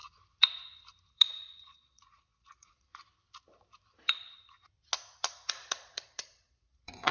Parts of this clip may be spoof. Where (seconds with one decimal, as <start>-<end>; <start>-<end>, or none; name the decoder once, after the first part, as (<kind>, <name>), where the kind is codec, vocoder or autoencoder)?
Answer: 1.1-2.9 (vocoder, Vocos); 5.5-7.1